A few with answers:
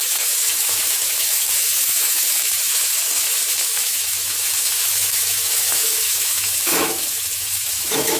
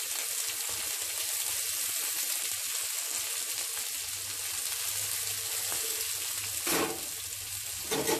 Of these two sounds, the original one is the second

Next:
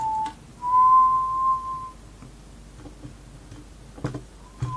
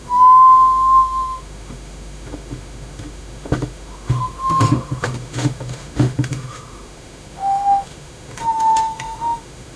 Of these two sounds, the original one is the first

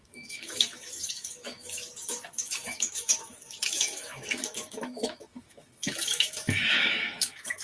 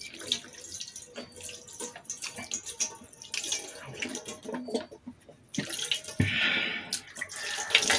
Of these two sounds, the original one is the second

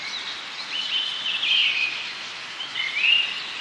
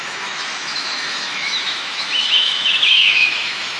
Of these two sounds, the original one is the first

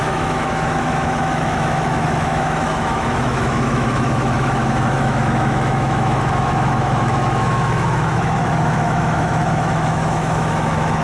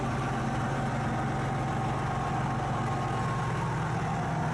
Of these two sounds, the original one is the second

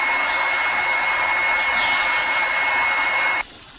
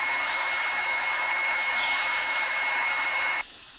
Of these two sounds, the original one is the first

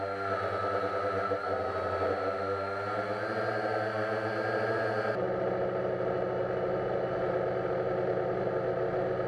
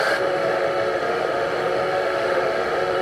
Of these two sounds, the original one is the first